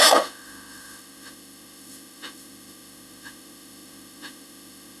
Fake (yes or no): yes